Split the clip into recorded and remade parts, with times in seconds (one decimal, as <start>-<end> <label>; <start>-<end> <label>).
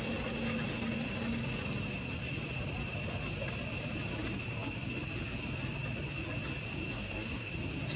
0.0-6.9 recorded; 6.9-7.5 remade; 7.5-8.0 recorded